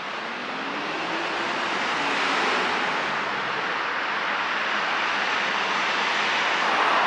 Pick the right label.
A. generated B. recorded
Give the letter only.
B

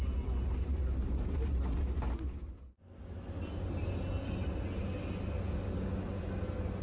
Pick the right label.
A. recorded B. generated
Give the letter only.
A